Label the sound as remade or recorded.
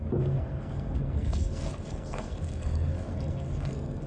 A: remade